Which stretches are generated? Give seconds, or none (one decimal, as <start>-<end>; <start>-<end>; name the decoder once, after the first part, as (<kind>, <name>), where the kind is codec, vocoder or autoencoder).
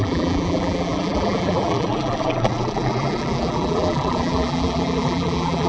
0.0-5.7 (vocoder, BigVGAN v2)